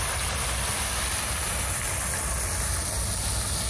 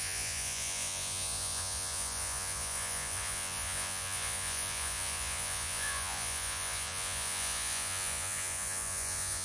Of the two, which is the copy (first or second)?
second